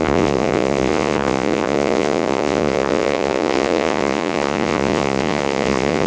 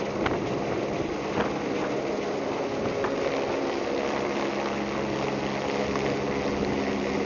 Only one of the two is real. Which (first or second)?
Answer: second